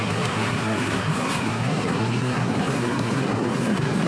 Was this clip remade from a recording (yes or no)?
yes